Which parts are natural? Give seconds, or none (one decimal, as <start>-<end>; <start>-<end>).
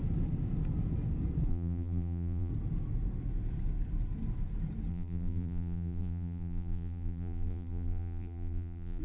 0.0-1.5; 2.5-4.9